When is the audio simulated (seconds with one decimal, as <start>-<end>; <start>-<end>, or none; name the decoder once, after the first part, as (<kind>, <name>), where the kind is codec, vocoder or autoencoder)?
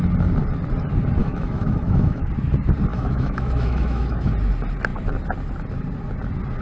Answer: 1.2-2.3 (autoencoder, DAC-VAE); 2.9-4.3